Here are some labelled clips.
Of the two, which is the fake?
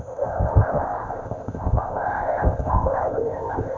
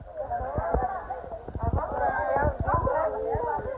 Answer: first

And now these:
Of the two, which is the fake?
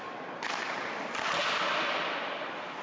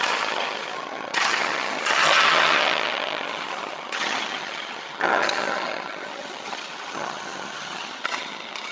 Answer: second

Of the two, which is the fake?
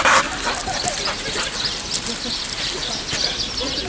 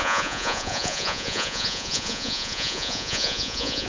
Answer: second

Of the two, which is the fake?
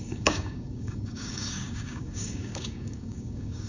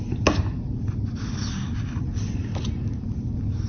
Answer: first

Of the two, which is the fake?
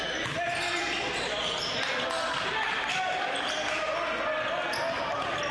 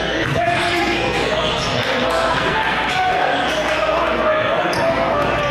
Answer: second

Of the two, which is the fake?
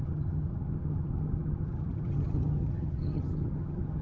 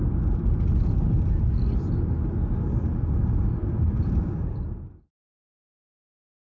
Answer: first